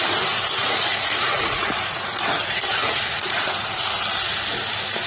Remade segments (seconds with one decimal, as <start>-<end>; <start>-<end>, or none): 0.6-3.7